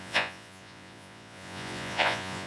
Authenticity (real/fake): fake